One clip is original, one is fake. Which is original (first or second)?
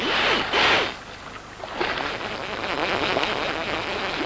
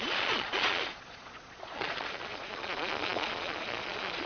first